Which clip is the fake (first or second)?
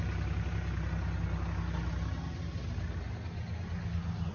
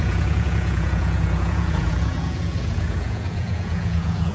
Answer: second